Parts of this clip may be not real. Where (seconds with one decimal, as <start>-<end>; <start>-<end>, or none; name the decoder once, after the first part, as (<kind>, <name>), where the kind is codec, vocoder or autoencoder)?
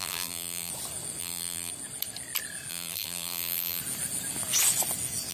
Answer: 0.0-0.7 (vocoder, BigVGAN v2); 1.2-1.7; 2.7-3.8